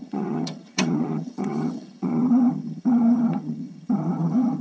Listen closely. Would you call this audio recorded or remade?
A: remade